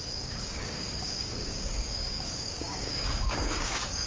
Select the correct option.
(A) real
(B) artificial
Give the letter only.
B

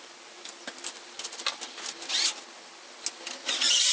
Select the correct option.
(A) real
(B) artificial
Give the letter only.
A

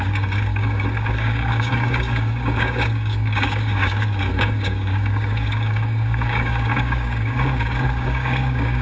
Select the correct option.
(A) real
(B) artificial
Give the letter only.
B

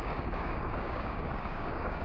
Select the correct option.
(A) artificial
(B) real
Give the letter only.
A